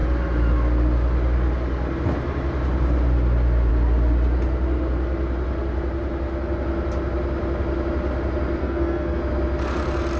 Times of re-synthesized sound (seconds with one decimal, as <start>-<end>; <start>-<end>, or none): 8.6-9.2